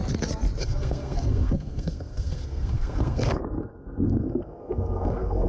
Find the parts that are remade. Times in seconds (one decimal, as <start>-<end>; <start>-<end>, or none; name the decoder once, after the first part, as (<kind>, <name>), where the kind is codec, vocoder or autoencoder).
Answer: 0.6-5.5 (codec, SNAC)

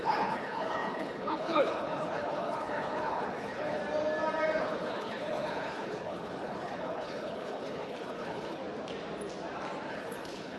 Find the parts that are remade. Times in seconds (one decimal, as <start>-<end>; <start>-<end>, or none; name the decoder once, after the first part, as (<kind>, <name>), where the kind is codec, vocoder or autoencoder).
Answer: 0.0-3.8 (codec, HILCodec); 4.6-8.6; 9.9-10.6

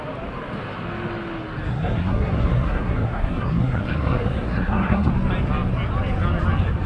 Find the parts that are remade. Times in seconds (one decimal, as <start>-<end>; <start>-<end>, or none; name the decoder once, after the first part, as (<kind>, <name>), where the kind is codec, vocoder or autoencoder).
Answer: 1.7-5.1 (codec, SNAC)

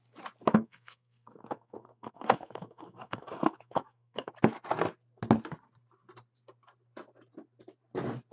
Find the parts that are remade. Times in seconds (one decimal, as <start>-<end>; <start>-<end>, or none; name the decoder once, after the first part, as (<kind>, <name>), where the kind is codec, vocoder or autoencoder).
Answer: 0.5-4.3 (codec, SNAC)

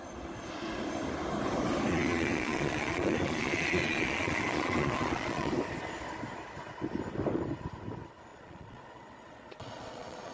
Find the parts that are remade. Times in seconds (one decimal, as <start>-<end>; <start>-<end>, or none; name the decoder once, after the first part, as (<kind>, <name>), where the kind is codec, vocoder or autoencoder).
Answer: 1.9-5.5 (vocoder, Vocos); 8.3-10.3

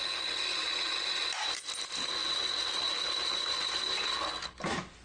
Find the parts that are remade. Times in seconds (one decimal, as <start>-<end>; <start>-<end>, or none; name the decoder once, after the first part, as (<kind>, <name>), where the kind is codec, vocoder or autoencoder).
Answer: 2.2-3.8 (vocoder, BigVGAN v2)